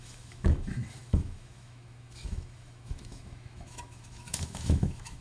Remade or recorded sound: remade